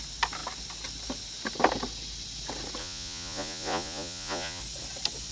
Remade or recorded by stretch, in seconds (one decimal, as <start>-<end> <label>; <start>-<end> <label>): 0.0-2.8 recorded; 2.8-4.6 remade; 4.6-5.3 recorded